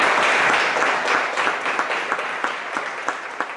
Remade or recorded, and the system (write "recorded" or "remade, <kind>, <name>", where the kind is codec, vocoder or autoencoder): recorded